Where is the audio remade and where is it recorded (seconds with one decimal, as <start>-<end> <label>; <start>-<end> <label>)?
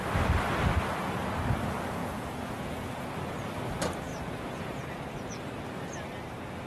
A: 0.0-2.0 recorded; 2.0-3.1 remade; 3.1-4.1 recorded; 4.1-5.3 remade; 5.3-6.7 recorded